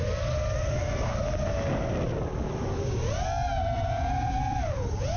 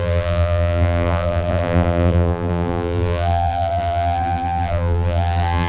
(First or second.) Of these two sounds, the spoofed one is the second